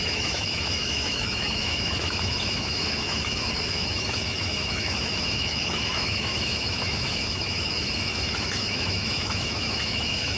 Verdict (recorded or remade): remade